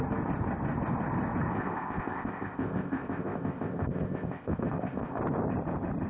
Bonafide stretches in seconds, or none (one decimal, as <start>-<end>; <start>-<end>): 0.0-1.5; 5.2-6.1